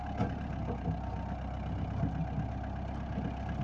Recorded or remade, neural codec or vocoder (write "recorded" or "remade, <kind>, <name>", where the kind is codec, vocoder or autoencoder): recorded